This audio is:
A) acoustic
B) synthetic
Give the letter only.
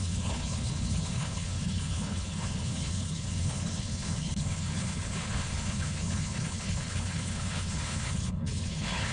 B